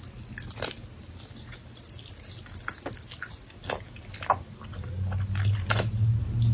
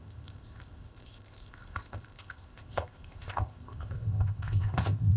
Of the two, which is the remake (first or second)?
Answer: second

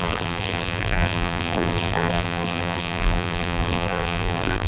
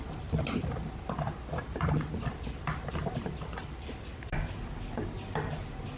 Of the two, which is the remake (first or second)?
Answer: first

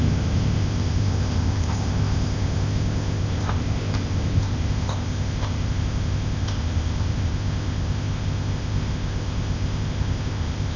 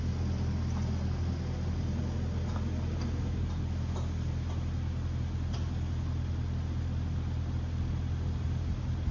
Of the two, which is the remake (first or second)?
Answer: first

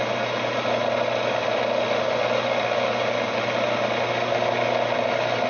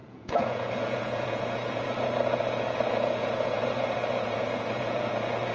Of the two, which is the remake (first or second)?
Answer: second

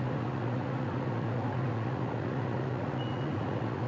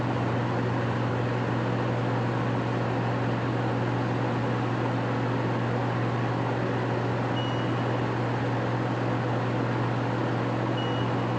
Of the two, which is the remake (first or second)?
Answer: first